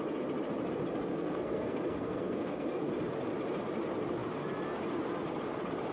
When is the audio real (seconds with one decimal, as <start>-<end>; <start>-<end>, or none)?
0.0-1.1; 2.9-5.9